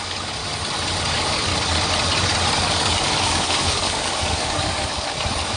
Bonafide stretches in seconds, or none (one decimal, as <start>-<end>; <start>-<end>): 0.4-1.1; 1.5-2.6